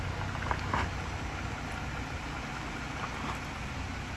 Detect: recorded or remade recorded